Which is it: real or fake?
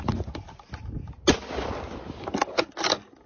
real